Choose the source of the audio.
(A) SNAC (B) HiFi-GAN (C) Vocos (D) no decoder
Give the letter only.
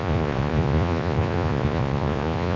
C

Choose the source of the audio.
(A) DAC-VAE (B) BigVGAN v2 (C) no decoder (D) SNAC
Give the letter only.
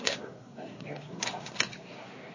D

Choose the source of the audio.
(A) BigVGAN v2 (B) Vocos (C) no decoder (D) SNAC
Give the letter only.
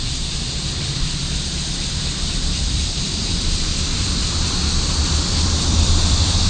A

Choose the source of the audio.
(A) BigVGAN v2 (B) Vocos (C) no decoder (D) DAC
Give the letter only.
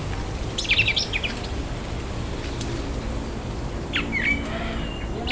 C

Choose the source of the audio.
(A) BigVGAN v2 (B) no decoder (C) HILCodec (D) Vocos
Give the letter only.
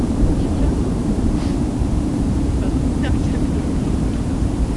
A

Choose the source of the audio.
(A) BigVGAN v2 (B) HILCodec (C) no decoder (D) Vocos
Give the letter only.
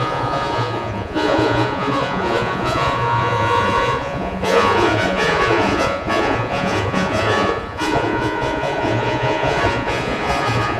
D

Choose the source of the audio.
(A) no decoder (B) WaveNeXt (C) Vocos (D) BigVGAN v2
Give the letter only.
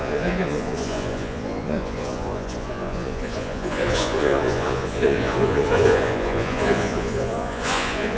C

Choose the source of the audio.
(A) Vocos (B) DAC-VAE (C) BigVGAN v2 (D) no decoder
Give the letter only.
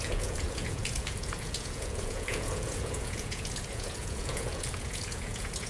A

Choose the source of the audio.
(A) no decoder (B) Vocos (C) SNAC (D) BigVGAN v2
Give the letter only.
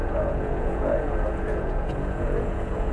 B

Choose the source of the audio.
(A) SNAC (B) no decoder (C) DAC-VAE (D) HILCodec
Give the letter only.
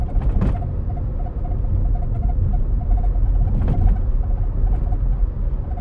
B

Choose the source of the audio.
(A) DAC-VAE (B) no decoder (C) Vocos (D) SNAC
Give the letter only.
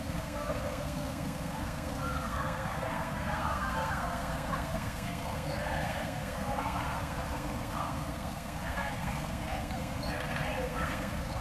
D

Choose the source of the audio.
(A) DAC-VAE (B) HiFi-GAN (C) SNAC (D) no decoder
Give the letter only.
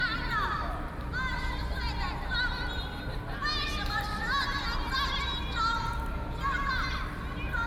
D